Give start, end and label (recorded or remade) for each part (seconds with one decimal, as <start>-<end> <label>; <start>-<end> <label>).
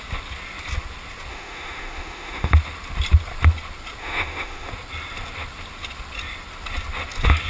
0.0-1.3 recorded; 1.3-2.5 remade; 2.5-4.0 recorded; 4.0-4.7 remade; 4.7-7.5 recorded